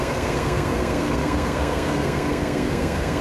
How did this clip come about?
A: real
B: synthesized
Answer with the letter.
B